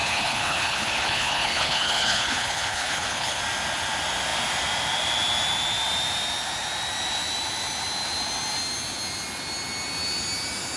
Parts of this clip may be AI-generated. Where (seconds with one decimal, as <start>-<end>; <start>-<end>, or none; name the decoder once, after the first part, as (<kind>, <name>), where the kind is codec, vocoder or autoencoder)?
0.0-3.4 (codec, HILCodec)

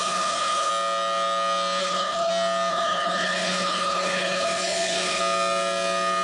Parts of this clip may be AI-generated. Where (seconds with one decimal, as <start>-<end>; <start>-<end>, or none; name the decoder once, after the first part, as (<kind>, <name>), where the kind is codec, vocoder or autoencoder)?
0.0-0.7 (codec, HILCodec); 1.8-2.3; 2.7-5.2